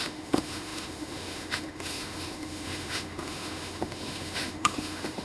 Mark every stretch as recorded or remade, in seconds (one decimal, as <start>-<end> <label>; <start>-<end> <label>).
0.0-5.2 remade